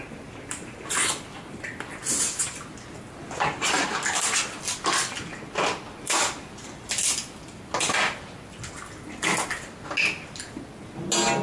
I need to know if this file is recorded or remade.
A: recorded